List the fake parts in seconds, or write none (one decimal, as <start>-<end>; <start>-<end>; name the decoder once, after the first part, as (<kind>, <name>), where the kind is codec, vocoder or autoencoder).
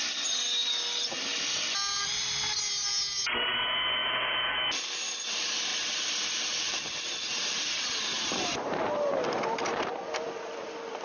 5.7-10.0 (vocoder, BigVGAN v2)